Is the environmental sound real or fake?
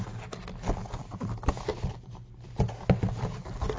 real